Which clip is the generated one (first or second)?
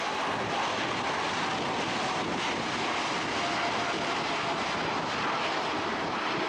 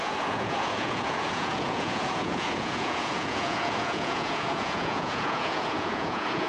second